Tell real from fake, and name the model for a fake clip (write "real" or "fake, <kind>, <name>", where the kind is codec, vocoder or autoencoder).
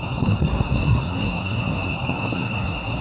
fake, codec, SNAC